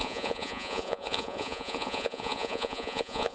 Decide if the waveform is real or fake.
fake